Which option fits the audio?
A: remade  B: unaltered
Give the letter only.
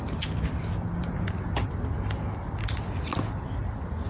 B